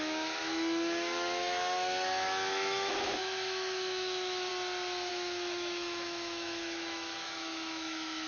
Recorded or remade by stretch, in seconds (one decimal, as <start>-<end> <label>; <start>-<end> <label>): 0.0-4.5 remade; 4.5-5.1 recorded; 5.1-8.3 remade